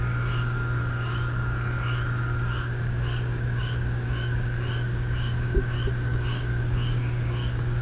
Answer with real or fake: fake